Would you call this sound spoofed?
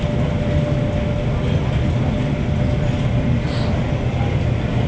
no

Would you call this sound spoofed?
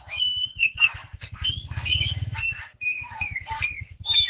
yes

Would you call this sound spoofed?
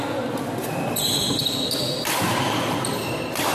no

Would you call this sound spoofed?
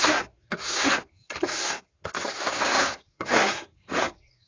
yes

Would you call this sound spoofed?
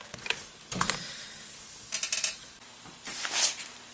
no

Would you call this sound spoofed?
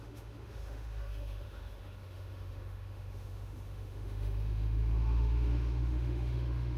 yes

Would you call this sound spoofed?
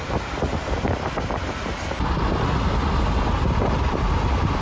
no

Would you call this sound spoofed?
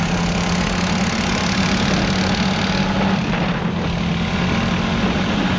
no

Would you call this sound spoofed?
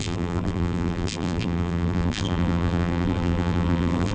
yes